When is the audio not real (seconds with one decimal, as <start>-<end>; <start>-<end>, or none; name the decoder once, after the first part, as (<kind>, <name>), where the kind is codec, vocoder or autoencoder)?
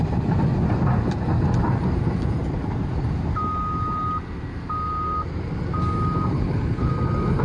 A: 6.3-6.9 (codec, HILCodec)